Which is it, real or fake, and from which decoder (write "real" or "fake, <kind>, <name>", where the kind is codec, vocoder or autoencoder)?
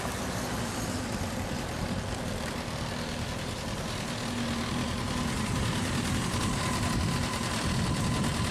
fake, vocoder, BigVGAN v2